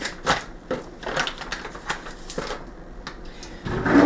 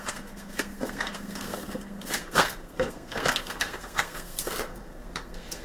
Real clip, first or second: first